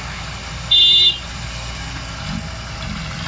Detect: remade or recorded recorded